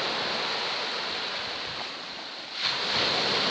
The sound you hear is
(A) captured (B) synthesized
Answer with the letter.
A